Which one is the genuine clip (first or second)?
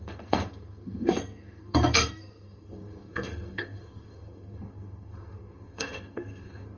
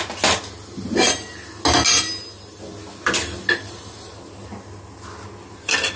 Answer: second